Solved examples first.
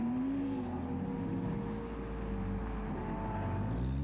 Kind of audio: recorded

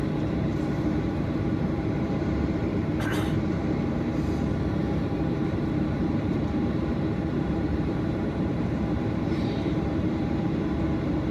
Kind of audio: remade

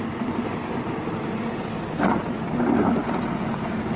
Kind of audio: recorded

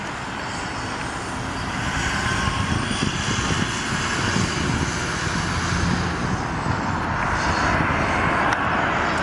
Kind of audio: recorded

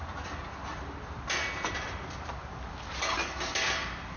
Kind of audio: recorded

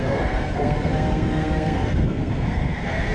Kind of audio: remade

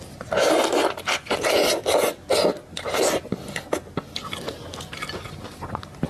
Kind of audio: recorded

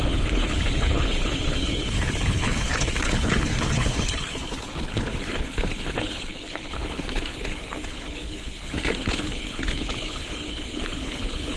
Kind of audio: remade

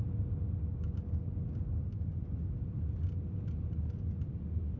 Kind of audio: recorded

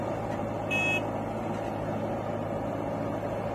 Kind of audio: recorded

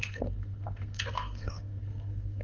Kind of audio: remade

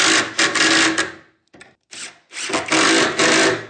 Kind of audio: recorded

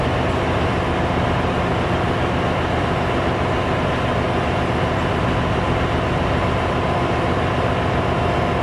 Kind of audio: recorded